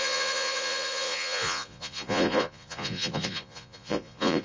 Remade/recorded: remade